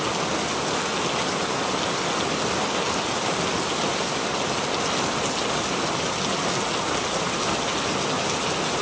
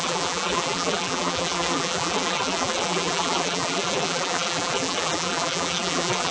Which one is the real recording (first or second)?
first